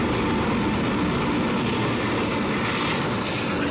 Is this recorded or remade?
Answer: recorded